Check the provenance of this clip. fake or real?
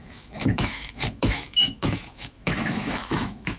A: fake